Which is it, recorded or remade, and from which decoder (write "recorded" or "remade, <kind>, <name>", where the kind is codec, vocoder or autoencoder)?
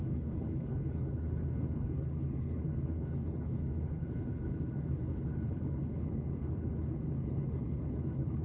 remade, codec, HILCodec